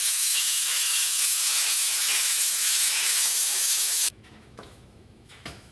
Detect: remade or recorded remade